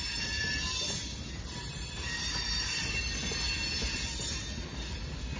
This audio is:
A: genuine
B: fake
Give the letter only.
A